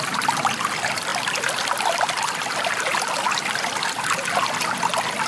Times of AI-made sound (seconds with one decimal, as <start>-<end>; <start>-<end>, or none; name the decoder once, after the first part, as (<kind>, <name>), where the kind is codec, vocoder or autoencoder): none